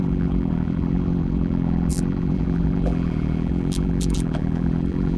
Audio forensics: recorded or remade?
remade